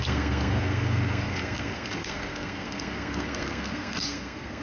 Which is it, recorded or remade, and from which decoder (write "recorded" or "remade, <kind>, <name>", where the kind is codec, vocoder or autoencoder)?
remade, codec, SNAC